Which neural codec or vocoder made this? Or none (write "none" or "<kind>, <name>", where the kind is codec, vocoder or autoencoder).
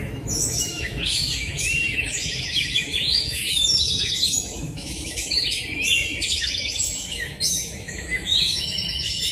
autoencoder, DAC-VAE